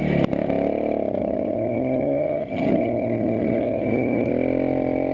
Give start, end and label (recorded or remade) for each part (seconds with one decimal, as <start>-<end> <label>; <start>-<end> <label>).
0.0-1.2 recorded; 1.2-4.3 remade; 4.3-5.1 recorded